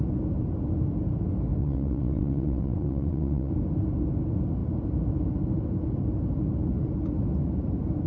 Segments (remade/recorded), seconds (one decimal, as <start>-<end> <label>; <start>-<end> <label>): 0.0-1.6 recorded; 1.6-3.5 remade; 3.5-8.1 recorded